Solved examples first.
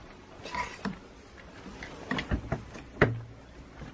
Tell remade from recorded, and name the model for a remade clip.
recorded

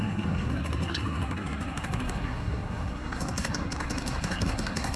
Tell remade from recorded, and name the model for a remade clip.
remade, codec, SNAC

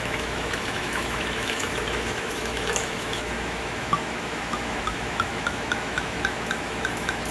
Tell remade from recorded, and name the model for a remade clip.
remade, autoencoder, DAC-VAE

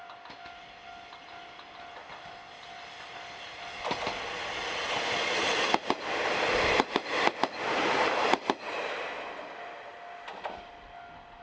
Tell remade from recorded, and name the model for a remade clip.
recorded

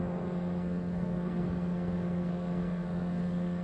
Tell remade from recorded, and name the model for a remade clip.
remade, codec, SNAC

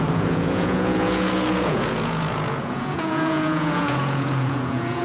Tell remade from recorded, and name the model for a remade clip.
remade, vocoder, Vocos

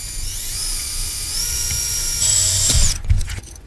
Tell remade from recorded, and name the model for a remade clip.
remade, vocoder, Vocos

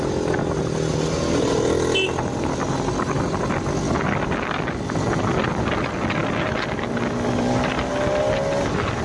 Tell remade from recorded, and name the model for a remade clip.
recorded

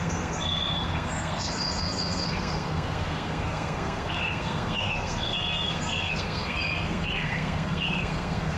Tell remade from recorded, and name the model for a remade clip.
remade, codec, SNAC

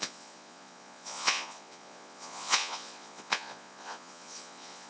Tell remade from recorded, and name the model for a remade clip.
remade, vocoder, Vocos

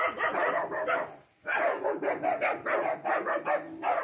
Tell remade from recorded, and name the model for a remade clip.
recorded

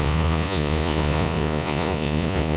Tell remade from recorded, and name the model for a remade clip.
remade, vocoder, Vocos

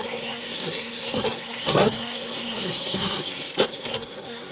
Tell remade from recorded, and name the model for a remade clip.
remade, codec, SNAC